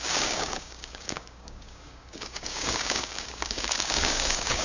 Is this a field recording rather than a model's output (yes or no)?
no